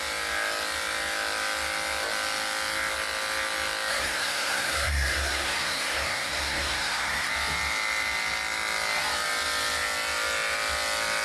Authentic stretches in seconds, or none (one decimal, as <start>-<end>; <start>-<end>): 0.0-3.9; 7.3-11.2